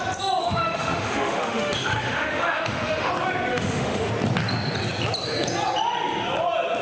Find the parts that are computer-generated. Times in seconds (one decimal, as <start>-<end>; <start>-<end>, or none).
0.4-3.1; 3.5-4.1

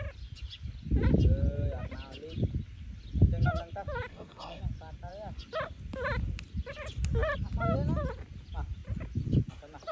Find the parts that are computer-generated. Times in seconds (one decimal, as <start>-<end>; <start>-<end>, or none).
4.1-4.6

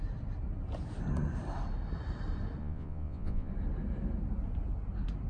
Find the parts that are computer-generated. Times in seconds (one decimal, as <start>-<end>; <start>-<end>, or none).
2.6-3.5

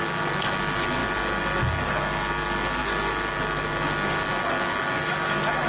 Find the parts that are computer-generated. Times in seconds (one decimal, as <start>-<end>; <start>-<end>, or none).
none

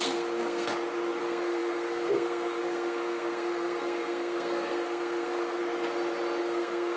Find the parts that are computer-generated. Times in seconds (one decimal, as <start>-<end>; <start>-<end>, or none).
0.0-0.7; 1.2-5.6; 6.4-7.0

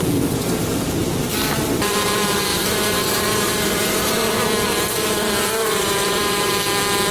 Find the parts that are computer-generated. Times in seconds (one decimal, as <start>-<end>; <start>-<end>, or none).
2.5-4.3; 5.6-6.5